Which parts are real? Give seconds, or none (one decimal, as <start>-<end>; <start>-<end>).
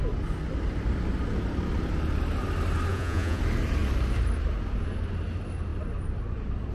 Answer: 0.0-2.9; 3.4-6.7